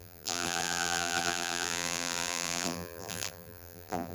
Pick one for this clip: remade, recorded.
remade